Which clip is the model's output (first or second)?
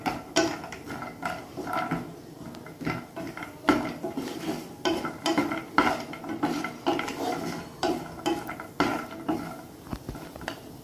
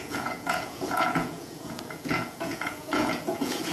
second